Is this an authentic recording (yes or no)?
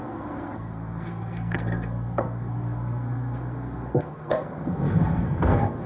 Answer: no